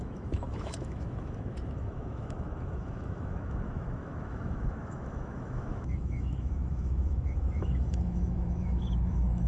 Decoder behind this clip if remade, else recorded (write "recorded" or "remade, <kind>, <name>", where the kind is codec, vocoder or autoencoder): remade, autoencoder, DAC-VAE